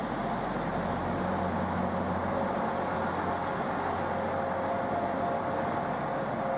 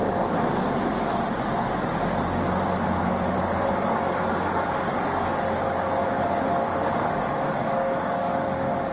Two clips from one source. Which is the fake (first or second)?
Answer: second